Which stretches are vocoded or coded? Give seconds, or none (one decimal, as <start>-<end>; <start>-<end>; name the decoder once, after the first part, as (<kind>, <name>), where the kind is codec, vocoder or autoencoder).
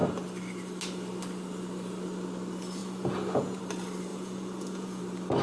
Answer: 2.8-3.6 (vocoder, Vocos); 4.1-5.0